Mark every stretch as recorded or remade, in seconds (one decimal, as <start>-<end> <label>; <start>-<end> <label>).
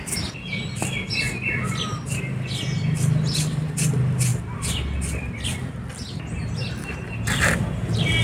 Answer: 0.0-8.2 recorded